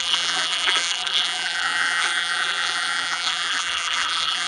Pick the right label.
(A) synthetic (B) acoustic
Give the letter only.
A